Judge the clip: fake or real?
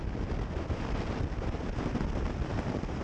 real